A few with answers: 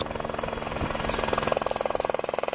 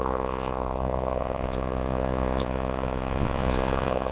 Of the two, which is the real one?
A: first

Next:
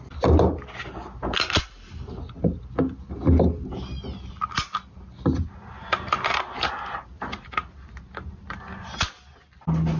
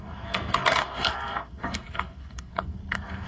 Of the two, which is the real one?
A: first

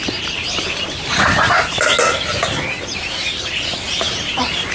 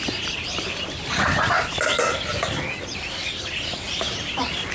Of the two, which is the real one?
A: first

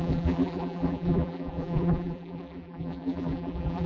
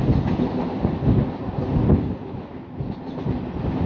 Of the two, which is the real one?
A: second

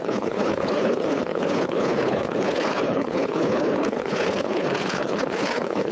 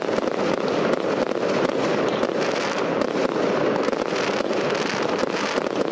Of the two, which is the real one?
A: second